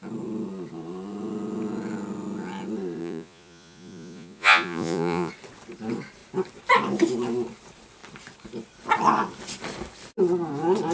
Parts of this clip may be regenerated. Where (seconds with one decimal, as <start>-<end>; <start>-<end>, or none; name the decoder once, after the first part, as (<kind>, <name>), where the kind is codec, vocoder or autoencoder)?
3.0-5.3 (vocoder, Vocos)